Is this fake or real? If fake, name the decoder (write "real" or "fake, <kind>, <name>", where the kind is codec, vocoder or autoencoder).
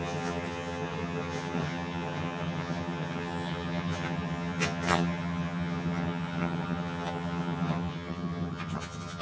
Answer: fake, vocoder, HiFi-GAN